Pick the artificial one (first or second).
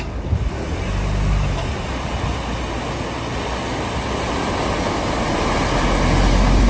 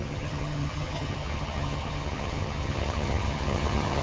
second